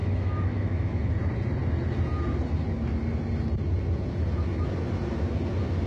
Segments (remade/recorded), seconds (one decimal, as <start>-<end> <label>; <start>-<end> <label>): 0.0-1.1 remade; 1.1-5.9 recorded